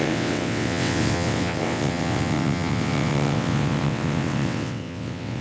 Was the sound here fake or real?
fake